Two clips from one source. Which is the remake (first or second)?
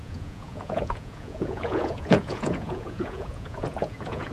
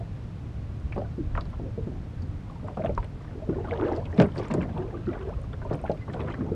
first